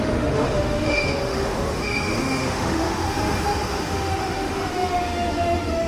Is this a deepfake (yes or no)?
yes